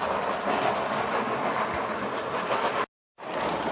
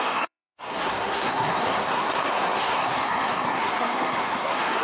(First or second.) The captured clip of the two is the first